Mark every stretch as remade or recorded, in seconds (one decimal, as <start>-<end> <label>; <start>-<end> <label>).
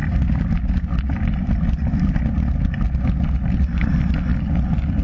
0.0-5.0 recorded